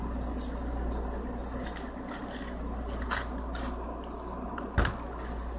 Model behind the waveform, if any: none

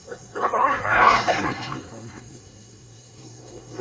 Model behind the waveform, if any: codec, SNAC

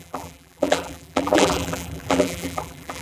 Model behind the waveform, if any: vocoder, BigVGAN v2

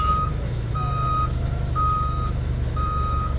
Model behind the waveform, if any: autoencoder, DAC-VAE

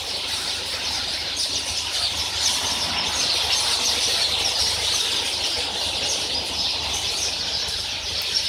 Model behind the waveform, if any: none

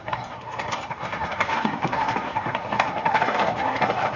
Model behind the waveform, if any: codec, SNAC